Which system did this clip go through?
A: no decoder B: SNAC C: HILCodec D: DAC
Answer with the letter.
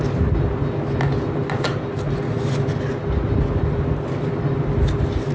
A